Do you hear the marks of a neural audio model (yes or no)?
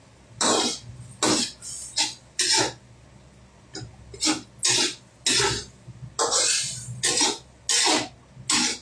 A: no